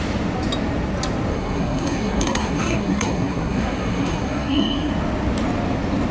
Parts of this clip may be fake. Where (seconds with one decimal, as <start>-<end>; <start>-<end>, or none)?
1.3-4.9